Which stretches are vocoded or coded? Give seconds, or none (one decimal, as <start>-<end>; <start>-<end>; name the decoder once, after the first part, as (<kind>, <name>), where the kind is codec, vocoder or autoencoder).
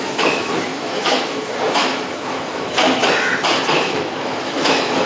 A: 0.0-3.0 (autoencoder, DAC-VAE); 3.7-5.1